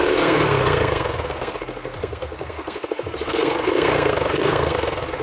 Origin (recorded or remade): remade